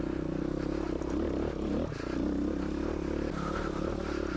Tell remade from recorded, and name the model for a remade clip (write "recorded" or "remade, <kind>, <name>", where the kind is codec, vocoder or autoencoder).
recorded